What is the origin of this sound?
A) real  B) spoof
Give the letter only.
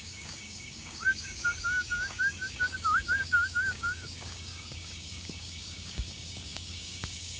B